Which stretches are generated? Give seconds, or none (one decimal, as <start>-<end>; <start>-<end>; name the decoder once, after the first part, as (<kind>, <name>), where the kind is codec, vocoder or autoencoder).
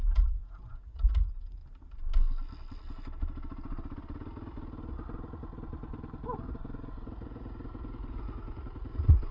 0.0-1.6 (vocoder, Vocos); 6.5-9.3